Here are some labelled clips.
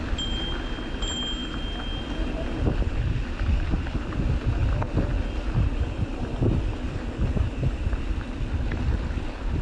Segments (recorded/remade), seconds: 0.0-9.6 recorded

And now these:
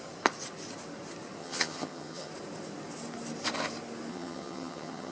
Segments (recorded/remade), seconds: 0.0-1.4 recorded; 1.4-2.3 remade; 2.3-4.1 recorded; 4.1-5.1 remade

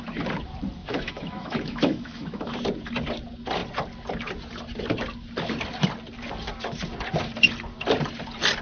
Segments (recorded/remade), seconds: 0.0-0.8 recorded; 0.8-2.5 remade; 2.5-8.6 recorded

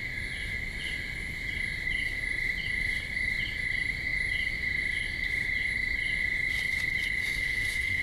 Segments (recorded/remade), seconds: 0.0-7.2 recorded; 7.2-8.0 remade

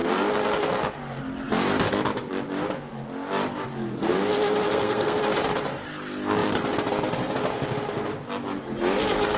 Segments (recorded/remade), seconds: 0.0-4.7 recorded; 4.7-5.2 remade; 5.2-9.4 recorded